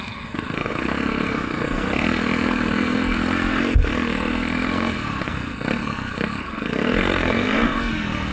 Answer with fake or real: fake